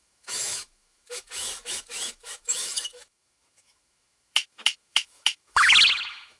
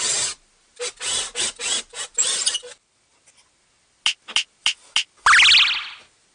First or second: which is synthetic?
first